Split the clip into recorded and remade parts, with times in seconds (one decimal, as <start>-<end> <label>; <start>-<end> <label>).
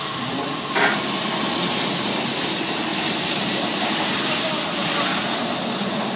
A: 0.0-2.9 recorded; 2.9-4.5 remade; 4.5-6.2 recorded